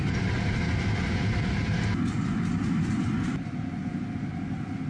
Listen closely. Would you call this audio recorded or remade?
recorded